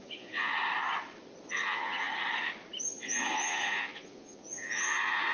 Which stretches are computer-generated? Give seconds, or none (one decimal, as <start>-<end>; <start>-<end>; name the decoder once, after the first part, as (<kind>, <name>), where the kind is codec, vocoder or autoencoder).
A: 0.0-0.5 (vocoder, Vocos); 1.5-2.1; 2.8-5.3